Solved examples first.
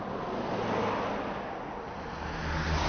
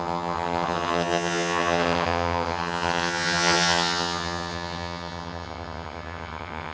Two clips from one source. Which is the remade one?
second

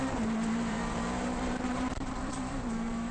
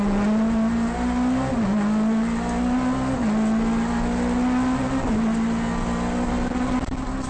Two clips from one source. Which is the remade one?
first